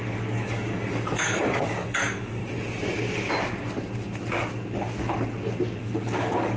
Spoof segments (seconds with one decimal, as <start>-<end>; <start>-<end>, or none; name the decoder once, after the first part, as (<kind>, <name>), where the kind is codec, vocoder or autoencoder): 0.0-2.4 (codec, DAC); 5.8-6.6